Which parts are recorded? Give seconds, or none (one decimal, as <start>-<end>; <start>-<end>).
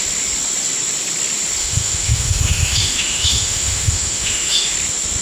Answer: 0.0-1.6; 4.7-5.2